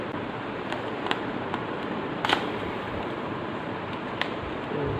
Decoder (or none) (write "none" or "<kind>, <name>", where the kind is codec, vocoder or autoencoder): vocoder, BigVGAN v2